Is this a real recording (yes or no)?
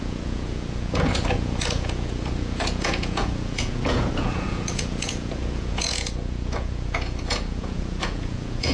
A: no